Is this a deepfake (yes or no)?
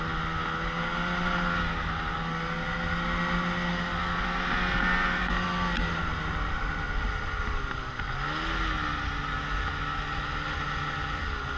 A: no